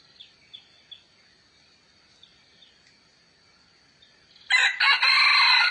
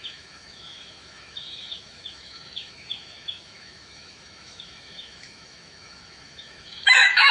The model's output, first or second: second